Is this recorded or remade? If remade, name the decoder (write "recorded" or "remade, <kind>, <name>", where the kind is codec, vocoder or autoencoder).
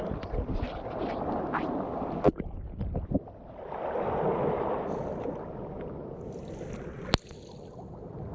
recorded